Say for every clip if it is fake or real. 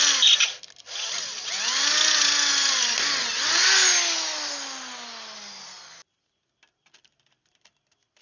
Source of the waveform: real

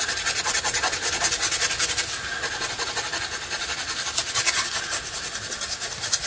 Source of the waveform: real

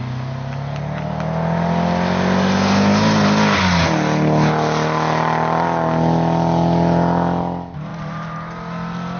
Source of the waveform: real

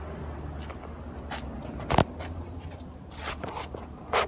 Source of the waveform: real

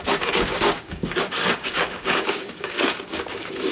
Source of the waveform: fake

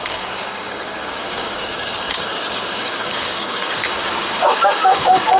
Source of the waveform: fake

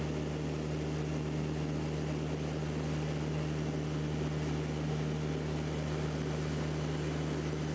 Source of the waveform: real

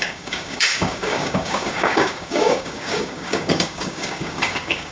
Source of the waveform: fake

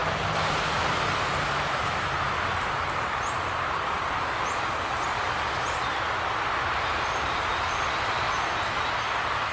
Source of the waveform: real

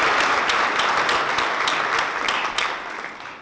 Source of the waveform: real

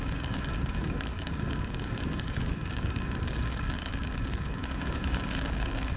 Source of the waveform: fake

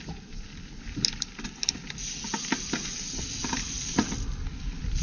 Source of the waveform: real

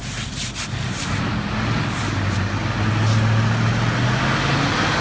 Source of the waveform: real